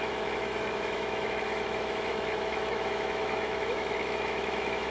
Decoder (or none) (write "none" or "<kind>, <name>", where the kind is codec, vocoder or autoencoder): autoencoder, DAC-VAE